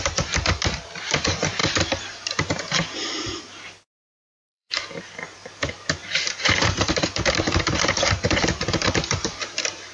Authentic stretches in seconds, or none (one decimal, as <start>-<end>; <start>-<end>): none